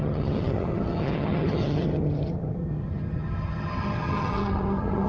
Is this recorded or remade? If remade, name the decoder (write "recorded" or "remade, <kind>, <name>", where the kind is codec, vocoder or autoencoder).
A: remade, vocoder, HiFi-GAN